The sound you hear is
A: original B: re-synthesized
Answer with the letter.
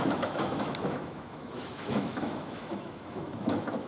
B